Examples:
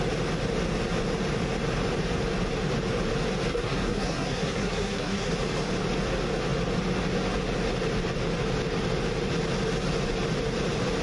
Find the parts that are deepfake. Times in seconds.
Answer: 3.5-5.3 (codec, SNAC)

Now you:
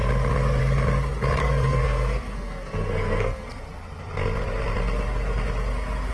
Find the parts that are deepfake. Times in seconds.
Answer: 1.4-3.6 (codec, SNAC)